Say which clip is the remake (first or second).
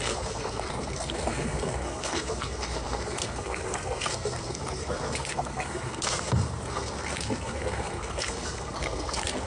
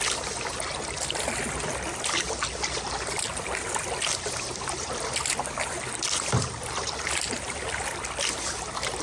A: first